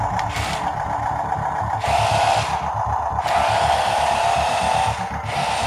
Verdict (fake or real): real